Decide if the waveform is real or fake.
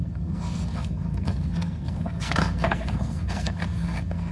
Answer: fake